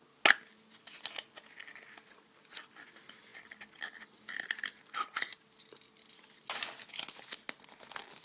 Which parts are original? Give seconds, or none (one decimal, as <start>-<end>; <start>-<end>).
0.0-8.2